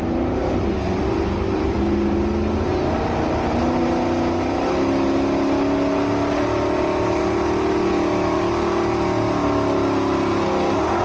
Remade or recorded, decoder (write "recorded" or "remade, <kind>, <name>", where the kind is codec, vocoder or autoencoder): recorded